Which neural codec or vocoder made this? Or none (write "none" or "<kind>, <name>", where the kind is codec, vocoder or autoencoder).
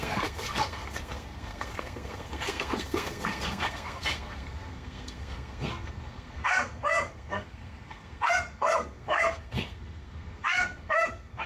codec, SNAC